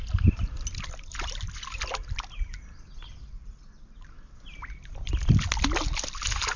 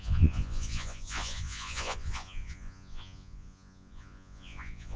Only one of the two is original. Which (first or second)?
first